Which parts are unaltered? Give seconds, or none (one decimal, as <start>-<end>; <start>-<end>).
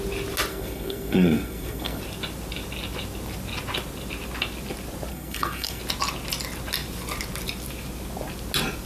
0.0-0.5; 2.0-5.1; 5.8-8.9